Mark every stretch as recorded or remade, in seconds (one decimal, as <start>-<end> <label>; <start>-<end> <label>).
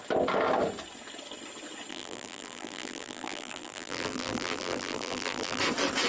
0.0-1.9 recorded; 1.9-5.6 remade; 5.6-6.1 recorded